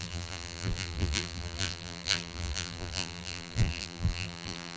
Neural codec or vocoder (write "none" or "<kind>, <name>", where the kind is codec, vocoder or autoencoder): vocoder, BigVGAN v2